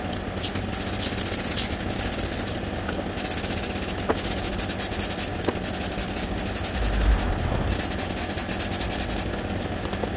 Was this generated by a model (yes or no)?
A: no